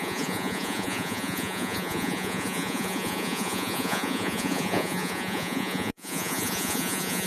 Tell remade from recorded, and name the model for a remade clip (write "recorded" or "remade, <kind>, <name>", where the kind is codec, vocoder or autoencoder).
remade, vocoder, Vocos